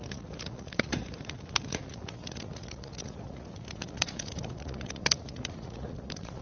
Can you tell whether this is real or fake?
fake